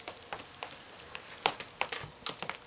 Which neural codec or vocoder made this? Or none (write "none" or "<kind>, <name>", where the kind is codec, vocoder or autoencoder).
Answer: none